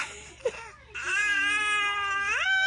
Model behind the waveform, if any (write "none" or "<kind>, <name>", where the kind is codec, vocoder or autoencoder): none